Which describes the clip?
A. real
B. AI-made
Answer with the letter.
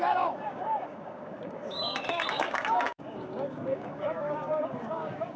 B